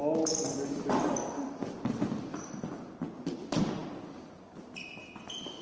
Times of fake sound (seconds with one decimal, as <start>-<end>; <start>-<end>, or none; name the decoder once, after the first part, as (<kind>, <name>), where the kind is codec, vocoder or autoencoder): none